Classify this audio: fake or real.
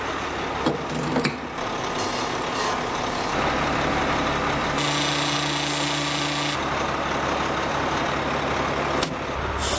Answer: real